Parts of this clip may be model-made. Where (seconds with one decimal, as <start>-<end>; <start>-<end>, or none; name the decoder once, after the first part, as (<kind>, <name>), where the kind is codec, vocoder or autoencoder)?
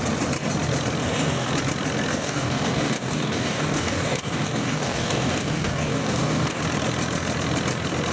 1.0-1.5 (codec, DAC); 2.1-6.6